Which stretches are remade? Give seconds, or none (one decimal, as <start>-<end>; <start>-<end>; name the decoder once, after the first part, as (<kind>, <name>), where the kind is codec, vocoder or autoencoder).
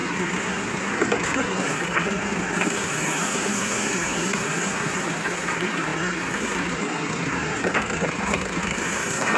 0.0-9.4 (codec, SNAC)